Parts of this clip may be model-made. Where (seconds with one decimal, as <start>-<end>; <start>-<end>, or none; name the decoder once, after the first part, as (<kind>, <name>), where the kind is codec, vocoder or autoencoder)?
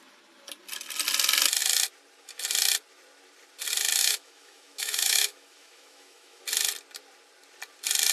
4.0-6.4 (autoencoder, DAC-VAE)